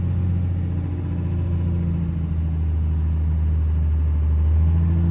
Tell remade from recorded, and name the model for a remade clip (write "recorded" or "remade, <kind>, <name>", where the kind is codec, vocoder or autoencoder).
recorded